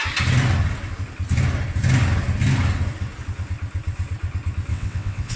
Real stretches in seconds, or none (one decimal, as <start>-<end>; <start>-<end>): 0.0-4.7